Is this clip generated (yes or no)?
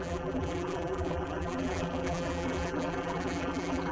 yes